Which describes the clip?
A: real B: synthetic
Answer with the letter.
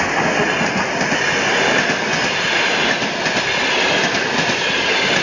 A